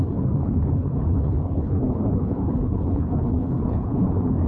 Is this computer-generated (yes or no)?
yes